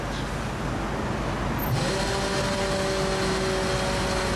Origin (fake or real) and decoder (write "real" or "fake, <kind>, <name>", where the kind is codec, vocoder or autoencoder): real